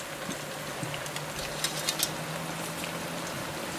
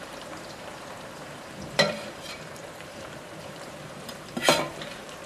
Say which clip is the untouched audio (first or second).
first